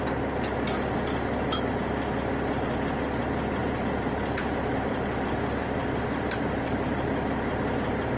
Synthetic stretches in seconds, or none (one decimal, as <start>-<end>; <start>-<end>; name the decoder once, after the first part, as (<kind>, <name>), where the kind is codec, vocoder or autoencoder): 3.6-7.0 (vocoder, BigVGAN v2)